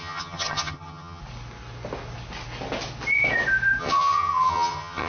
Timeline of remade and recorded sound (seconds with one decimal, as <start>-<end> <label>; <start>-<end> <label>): 0.0-1.2 remade; 1.2-3.8 recorded; 3.8-5.1 remade